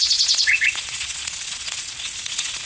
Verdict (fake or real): fake